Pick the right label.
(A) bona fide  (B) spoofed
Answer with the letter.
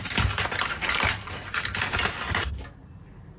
A